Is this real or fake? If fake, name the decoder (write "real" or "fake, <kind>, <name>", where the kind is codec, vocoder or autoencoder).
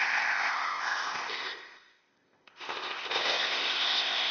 fake, codec, ZipCodec